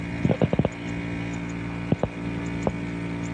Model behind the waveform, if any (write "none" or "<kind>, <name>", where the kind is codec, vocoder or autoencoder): none